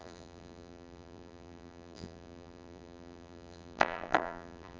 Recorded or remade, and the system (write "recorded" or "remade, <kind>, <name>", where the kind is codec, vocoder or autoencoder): remade, vocoder, BigVGAN v2